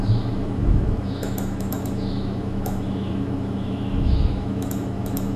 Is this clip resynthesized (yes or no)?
yes